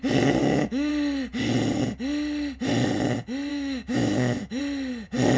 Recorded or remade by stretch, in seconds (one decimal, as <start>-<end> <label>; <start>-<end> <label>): 0.0-0.4 recorded; 0.4-0.9 remade; 0.9-3.5 recorded; 3.5-4.6 remade; 4.6-5.4 recorded